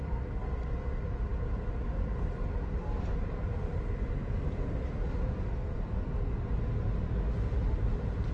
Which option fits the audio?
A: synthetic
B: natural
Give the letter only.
B